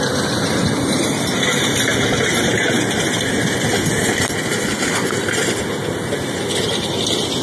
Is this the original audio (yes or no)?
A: yes